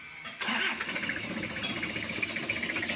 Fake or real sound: real